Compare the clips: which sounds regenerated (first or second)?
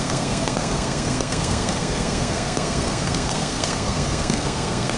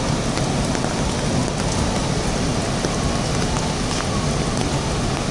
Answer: first